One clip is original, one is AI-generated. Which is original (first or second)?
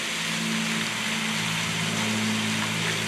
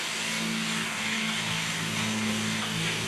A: first